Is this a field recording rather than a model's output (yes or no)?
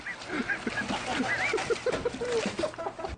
yes